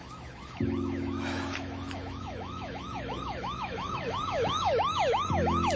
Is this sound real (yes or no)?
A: no